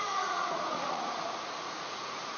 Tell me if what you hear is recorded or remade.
remade